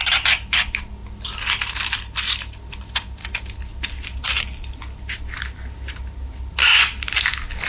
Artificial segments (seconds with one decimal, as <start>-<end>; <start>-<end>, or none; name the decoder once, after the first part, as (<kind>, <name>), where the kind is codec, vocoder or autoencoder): none